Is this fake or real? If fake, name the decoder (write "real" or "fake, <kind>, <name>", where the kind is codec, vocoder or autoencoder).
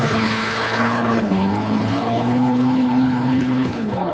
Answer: fake, codec, HILCodec